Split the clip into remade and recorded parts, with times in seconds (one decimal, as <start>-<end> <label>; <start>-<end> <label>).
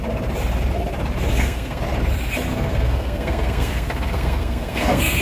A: 0.0-1.3 recorded; 1.3-1.8 remade; 1.8-2.5 recorded; 2.5-5.2 remade